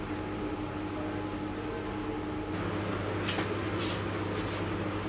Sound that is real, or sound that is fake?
real